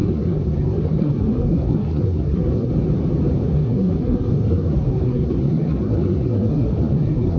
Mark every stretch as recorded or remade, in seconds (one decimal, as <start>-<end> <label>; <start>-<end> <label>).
0.0-2.7 remade; 2.7-3.4 recorded; 3.4-7.4 remade

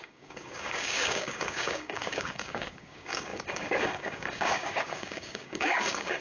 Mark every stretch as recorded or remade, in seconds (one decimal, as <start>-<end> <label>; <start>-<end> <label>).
0.0-6.2 remade

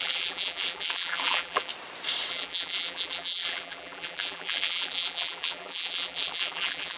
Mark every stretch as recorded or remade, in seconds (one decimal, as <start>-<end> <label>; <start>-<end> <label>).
0.0-1.7 remade; 1.7-2.3 recorded; 2.3-7.0 remade

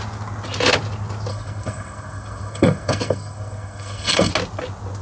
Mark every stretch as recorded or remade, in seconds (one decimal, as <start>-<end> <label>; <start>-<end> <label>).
0.0-1.3 recorded; 1.3-4.3 remade; 4.3-5.0 recorded

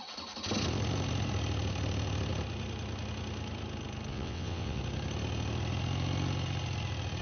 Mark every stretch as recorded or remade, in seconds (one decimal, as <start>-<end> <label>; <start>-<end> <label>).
0.0-4.1 recorded; 4.1-4.8 remade; 4.8-7.2 recorded

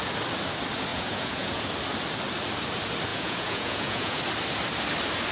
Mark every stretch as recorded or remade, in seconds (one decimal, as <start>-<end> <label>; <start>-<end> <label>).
0.0-0.9 recorded; 0.9-1.6 remade; 1.6-3.1 recorded; 3.1-4.2 remade; 4.2-5.3 recorded

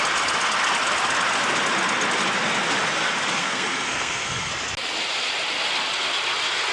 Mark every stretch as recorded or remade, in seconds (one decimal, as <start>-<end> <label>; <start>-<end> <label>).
0.0-3.4 recorded; 3.4-4.5 remade; 4.5-6.7 recorded